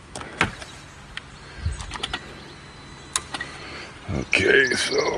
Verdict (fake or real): real